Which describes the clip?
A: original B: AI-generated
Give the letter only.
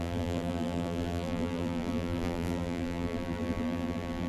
B